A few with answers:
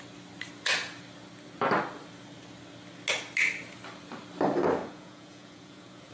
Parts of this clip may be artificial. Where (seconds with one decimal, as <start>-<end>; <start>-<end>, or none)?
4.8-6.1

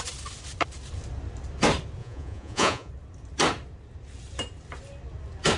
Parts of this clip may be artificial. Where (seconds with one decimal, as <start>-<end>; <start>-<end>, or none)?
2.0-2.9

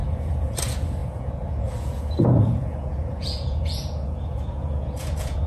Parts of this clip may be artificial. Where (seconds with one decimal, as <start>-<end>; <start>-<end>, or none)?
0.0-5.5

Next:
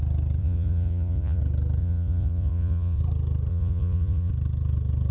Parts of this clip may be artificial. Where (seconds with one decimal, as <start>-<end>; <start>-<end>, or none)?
0.4-1.4; 1.8-3.0; 3.5-4.3

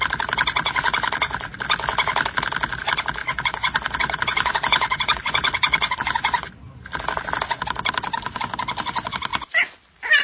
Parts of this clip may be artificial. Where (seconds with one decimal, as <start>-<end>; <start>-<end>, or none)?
3.2-6.5

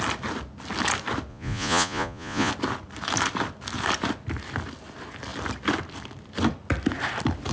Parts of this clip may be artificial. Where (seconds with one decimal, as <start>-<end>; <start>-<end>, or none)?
1.3-2.5

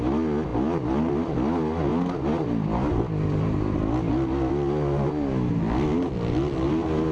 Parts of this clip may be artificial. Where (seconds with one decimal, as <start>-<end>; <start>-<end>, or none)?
none

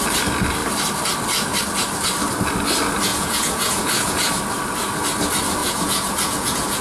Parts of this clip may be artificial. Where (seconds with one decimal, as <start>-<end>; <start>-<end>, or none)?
3.1-4.3; 5.6-6.8